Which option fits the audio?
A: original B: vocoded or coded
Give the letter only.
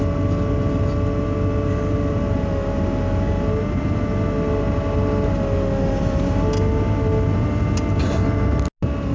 A